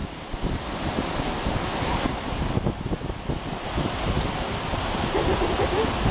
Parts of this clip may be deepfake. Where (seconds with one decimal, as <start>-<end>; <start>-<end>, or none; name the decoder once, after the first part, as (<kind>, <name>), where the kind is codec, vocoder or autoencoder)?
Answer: 3.7-6.1 (vocoder, BigVGAN v2)